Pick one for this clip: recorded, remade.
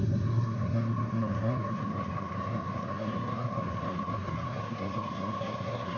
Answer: remade